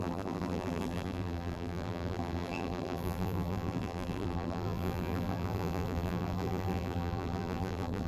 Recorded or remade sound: remade